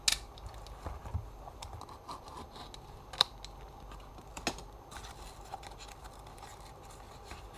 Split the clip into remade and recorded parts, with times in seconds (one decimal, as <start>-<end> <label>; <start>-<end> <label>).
0.0-7.6 recorded